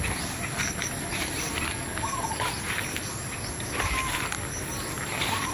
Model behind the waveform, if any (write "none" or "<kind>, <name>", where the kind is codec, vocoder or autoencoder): vocoder, BigVGAN v2